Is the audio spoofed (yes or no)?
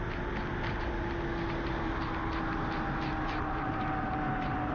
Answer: no